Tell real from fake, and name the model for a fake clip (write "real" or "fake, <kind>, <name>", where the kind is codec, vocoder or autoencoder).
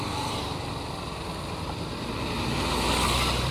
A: real